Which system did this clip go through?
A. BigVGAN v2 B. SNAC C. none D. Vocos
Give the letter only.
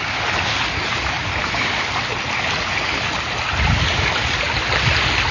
C